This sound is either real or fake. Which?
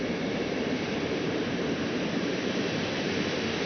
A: fake